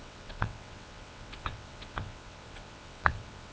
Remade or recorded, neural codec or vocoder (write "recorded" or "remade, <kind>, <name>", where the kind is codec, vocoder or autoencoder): remade, vocoder, WaveNeXt